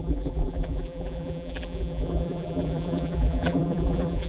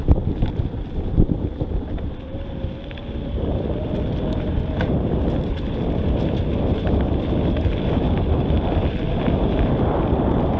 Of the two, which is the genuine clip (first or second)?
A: second